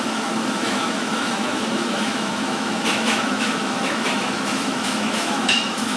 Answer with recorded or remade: remade